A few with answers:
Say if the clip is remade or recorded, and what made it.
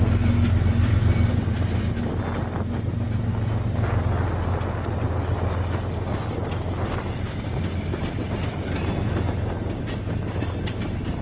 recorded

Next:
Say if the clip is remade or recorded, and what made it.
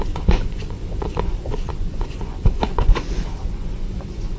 remade, vocoder, Vocos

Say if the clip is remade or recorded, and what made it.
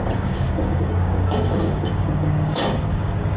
remade, codec, DAC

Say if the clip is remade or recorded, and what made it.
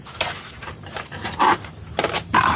remade, vocoder, BigVGAN v2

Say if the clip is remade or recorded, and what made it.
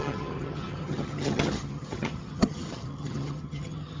remade, vocoder, HiFi-GAN